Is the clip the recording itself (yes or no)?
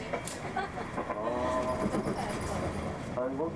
yes